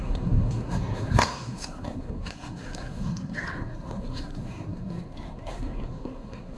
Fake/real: fake